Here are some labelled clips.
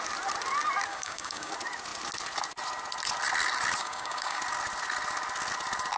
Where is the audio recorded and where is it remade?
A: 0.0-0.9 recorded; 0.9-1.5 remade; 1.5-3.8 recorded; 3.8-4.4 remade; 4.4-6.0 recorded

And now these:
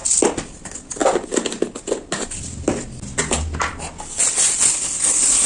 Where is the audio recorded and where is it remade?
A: 0.0-4.7 recorded; 4.7-5.5 remade

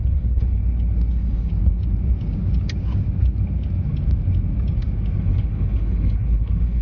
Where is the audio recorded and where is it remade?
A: 0.0-0.6 remade; 0.6-1.1 recorded; 1.1-1.5 remade; 1.5-5.2 recorded; 5.2-6.8 remade

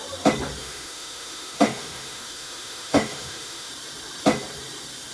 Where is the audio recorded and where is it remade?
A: 0.0-0.6 recorded; 0.6-3.7 remade; 3.7-5.1 recorded